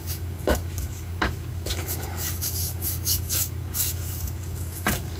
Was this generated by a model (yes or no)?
yes